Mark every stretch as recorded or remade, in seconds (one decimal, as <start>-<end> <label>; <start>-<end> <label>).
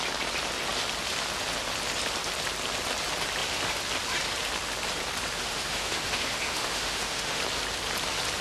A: 0.0-5.4 recorded; 5.4-7.4 remade; 7.4-8.4 recorded